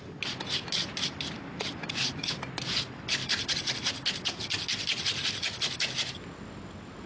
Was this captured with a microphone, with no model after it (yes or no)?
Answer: yes